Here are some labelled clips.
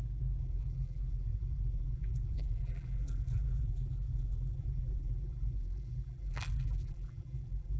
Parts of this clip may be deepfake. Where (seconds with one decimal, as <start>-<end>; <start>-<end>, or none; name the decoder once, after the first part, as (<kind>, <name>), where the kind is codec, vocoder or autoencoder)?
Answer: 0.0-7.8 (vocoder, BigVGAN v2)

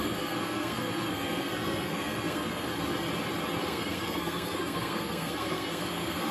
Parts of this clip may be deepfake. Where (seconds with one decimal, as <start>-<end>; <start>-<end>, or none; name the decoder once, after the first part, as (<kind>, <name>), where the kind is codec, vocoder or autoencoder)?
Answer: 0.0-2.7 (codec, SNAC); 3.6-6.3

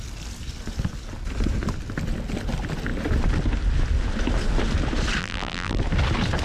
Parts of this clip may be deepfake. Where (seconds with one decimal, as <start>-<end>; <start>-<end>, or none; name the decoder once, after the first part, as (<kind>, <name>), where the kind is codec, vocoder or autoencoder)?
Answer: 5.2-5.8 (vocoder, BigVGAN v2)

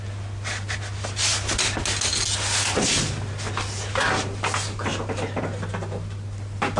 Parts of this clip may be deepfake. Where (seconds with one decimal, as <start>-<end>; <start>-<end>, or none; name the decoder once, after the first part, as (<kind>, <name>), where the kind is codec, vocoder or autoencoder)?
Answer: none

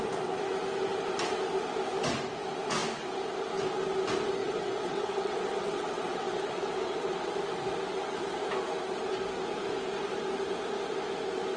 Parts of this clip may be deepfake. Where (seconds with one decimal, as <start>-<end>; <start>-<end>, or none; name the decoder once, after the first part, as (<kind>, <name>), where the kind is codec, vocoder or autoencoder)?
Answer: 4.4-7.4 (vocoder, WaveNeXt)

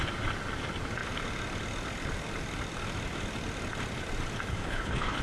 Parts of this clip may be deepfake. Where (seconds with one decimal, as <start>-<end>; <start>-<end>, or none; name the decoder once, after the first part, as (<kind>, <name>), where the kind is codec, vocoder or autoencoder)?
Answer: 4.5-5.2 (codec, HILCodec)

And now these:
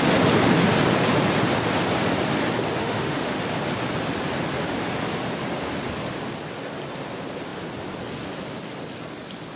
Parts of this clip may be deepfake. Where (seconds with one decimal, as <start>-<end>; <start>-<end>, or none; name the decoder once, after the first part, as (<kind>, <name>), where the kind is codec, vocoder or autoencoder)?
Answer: 2.8-3.3 (autoencoder, DAC-VAE)